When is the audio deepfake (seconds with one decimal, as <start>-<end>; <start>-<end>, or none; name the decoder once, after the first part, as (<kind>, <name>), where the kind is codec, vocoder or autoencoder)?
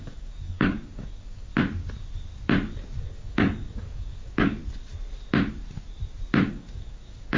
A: 0.0-1.5 (codec, DAC); 3.0-4.6; 6.5-7.4